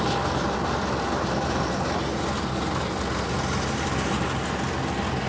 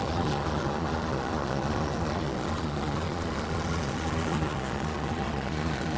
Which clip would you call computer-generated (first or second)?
second